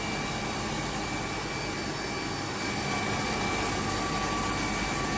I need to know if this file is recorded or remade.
recorded